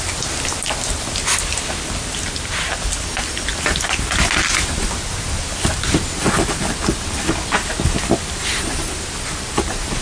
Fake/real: real